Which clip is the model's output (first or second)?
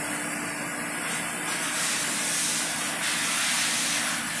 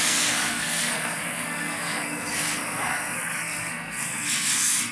second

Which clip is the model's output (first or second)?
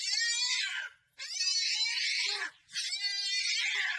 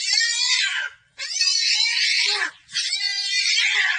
second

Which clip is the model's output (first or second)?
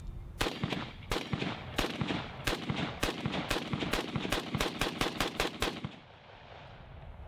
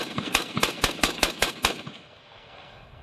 second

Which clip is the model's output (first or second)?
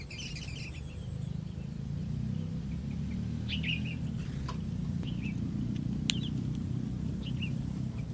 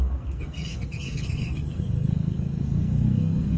second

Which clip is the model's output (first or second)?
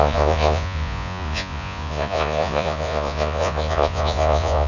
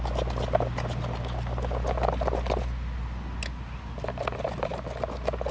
first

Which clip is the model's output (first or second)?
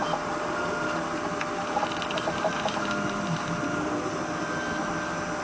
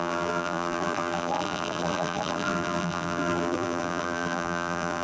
second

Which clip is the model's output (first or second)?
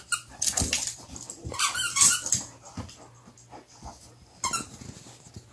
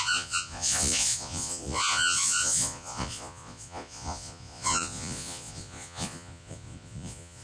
second